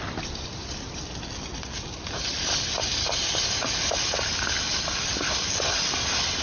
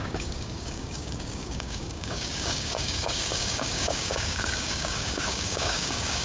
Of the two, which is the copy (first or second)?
second